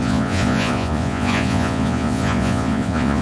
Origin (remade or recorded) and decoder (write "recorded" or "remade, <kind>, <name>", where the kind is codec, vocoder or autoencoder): remade, vocoder, Vocos